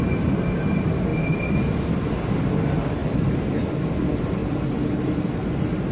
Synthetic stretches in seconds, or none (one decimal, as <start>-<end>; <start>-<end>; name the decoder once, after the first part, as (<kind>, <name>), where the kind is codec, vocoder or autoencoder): 3.0-3.7 (vocoder, BigVGAN v2); 4.4-5.9